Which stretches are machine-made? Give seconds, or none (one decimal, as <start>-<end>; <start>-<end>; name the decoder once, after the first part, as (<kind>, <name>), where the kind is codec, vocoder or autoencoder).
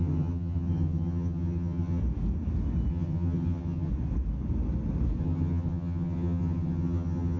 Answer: 0.0-2.0 (vocoder, HiFi-GAN); 2.9-3.9; 5.2-7.4